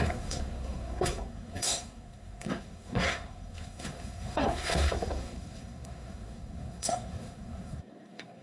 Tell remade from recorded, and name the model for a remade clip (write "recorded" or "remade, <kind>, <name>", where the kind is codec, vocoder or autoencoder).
remade, codec, SNAC